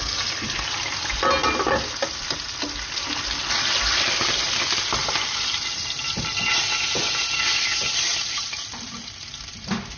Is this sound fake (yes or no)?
no